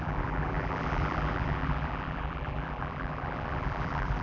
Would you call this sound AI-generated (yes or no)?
yes